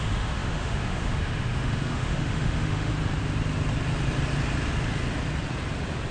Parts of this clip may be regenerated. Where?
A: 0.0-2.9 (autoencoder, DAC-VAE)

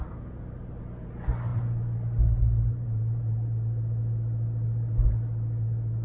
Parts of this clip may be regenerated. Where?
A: none

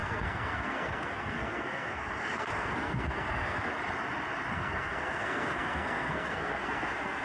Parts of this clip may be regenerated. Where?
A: 0.0-3.7 (codec, SNAC); 4.5-7.2

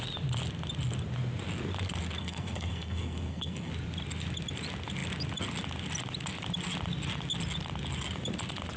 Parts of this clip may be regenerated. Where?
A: 2.2-3.7 (codec, SNAC)